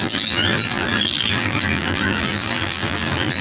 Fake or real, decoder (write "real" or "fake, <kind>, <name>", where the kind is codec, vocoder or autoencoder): fake, vocoder, BigVGAN v2